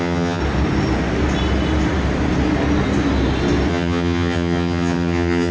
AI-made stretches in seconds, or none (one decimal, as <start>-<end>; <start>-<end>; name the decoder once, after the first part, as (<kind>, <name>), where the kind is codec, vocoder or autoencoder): 0.0-0.4 (vocoder, HiFi-GAN); 3.7-5.5